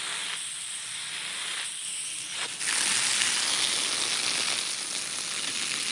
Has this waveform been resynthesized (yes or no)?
no